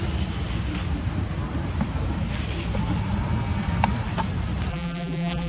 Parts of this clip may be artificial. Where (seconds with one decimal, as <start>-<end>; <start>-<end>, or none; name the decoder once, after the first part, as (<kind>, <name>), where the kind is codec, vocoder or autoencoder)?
4.7-5.5 (vocoder, BigVGAN v2)